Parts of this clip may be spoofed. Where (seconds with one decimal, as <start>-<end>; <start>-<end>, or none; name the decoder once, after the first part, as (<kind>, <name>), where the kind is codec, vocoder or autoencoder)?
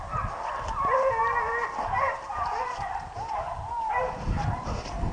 none